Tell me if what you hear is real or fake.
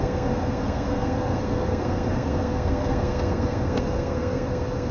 fake